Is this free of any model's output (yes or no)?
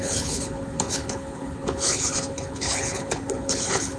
no